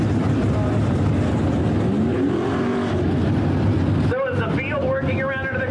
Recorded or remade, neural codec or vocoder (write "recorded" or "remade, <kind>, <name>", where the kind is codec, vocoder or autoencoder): recorded